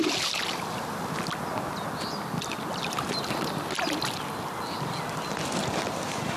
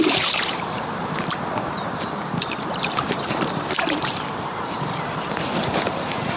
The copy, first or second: second